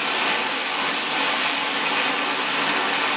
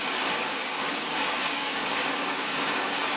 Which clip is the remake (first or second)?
second